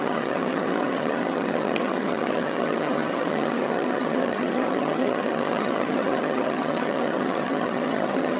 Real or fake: fake